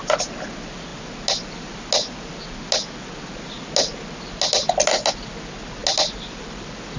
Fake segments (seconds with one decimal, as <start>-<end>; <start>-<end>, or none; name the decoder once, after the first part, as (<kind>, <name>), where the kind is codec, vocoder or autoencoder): none